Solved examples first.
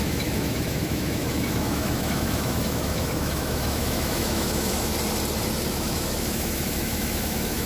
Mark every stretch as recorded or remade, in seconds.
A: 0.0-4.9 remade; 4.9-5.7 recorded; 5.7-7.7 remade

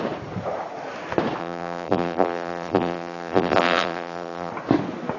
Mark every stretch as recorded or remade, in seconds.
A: 0.0-1.4 recorded; 1.4-4.5 remade; 4.5-5.2 recorded